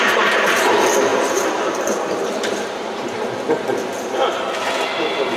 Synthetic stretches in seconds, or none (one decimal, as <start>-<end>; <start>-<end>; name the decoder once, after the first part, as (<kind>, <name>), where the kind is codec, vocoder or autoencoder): 1.1-3.3 (vocoder, BigVGAN v2)